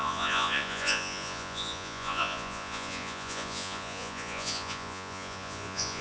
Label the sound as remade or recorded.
remade